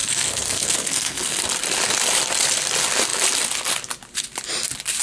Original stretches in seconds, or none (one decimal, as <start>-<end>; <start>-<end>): 1.4-5.0